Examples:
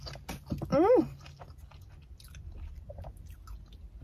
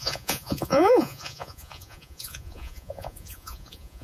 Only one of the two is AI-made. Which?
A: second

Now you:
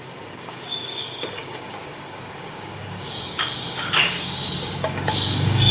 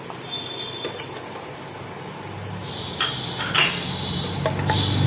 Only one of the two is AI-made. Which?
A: first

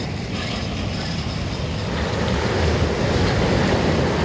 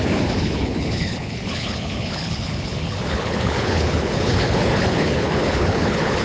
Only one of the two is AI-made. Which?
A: second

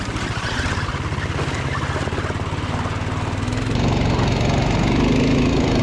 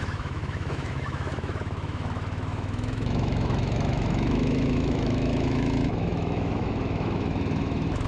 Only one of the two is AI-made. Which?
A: second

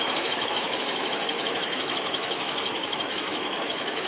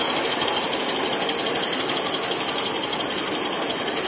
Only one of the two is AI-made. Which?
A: first